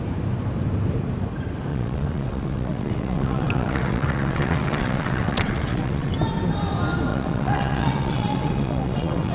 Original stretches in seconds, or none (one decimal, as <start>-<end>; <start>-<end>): 0.0-1.7; 6.1-7.1